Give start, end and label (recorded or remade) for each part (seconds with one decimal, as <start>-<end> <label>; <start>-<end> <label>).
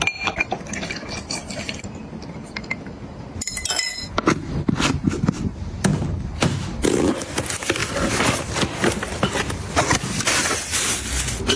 0.0-11.6 recorded